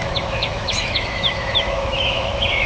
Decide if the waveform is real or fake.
fake